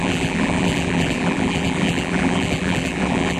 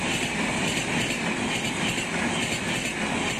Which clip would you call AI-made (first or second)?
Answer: first